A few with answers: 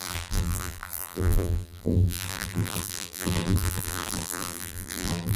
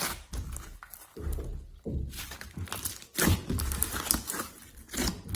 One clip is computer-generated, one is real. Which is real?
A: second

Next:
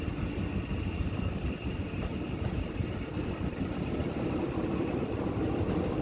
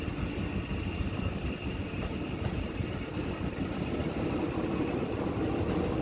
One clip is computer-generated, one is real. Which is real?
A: second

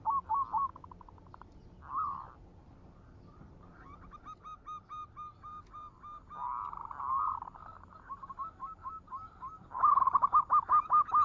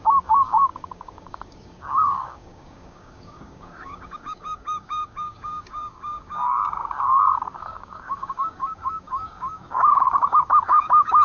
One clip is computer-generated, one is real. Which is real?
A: first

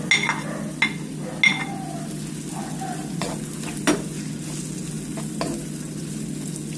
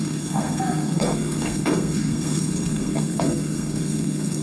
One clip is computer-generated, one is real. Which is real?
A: first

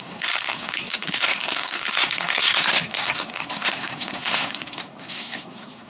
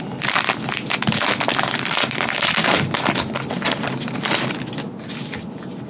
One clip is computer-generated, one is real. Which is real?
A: second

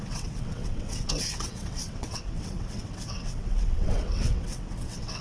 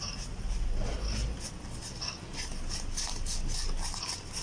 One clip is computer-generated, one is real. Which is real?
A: second